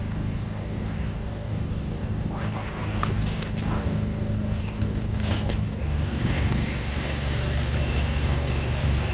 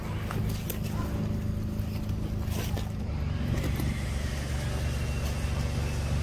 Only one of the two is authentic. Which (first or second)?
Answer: second